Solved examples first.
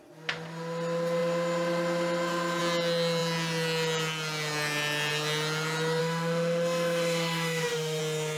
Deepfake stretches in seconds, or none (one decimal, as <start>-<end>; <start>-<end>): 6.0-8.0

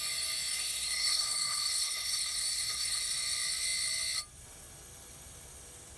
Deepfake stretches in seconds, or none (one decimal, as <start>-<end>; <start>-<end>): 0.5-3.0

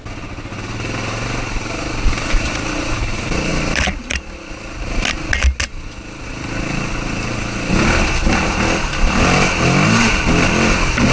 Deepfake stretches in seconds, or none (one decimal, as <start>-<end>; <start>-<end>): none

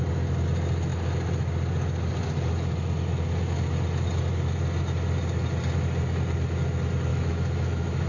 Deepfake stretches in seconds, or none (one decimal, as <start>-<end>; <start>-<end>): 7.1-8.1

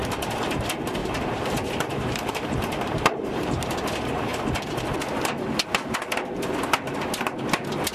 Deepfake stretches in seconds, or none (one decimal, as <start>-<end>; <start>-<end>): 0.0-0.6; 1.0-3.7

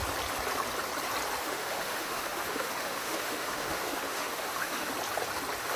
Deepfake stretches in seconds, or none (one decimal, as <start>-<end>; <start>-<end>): 1.4-4.9

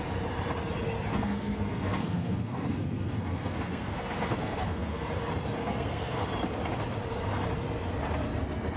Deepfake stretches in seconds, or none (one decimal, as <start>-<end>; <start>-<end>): 1.1-5.1; 5.6-6.2